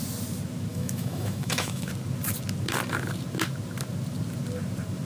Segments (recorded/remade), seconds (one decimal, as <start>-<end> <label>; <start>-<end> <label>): 0.0-0.7 recorded; 0.7-1.9 remade; 1.9-5.0 recorded